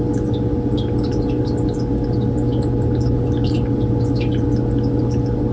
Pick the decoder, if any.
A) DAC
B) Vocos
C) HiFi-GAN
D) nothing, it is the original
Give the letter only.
D